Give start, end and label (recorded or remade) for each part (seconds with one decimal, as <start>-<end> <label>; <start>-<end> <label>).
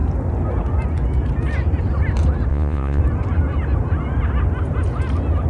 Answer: 0.0-2.5 recorded; 2.5-3.0 remade; 3.0-5.5 recorded